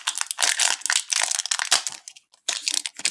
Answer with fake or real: real